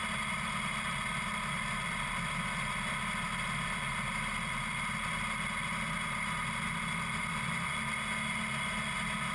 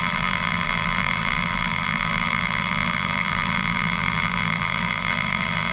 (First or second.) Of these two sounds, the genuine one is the first